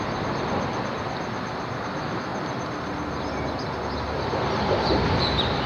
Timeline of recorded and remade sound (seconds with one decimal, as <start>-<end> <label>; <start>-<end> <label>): 0.0-5.7 recorded